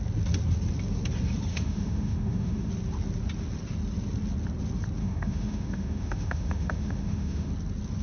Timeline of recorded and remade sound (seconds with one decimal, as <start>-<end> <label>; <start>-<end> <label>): 0.0-1.5 recorded; 1.5-2.7 remade; 2.7-5.0 recorded; 5.0-7.5 remade; 7.5-8.0 recorded